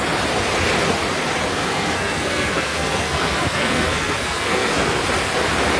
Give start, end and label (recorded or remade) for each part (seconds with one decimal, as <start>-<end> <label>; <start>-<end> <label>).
0.0-1.5 recorded; 1.5-5.0 remade; 5.0-5.8 recorded